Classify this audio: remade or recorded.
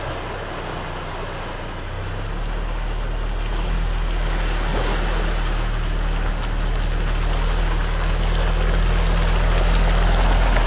recorded